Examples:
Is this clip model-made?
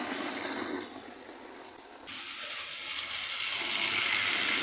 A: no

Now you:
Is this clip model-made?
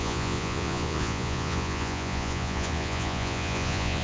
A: yes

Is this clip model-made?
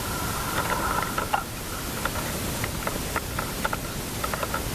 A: no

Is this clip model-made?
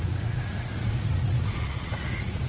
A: yes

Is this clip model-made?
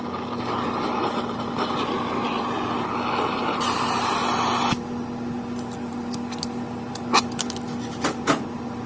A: no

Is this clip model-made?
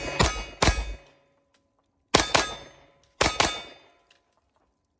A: no